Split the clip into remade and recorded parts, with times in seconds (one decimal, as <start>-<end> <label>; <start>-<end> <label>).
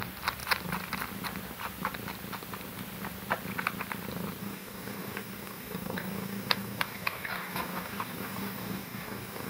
0.0-4.4 recorded; 4.4-9.5 remade